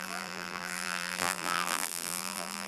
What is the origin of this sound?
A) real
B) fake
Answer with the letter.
B